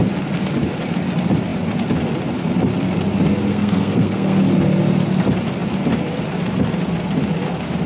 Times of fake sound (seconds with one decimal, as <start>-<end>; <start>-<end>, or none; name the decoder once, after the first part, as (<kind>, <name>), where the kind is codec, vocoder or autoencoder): 3.5-4.4 (codec, SNAC)